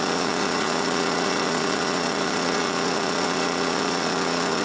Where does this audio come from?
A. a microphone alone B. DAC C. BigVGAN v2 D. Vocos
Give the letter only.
D